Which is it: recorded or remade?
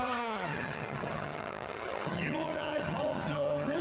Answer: remade